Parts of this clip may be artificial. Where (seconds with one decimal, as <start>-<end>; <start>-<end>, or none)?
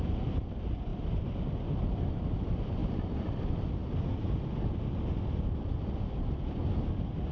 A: 2.8-3.4